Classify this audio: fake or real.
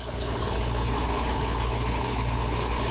fake